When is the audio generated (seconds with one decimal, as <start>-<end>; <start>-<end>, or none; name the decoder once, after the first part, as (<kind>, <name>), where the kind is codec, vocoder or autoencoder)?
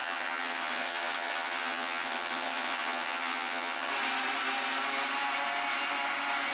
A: 0.0-3.9 (vocoder, HiFi-GAN)